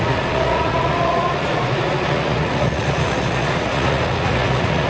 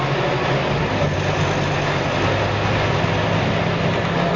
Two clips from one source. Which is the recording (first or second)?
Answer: second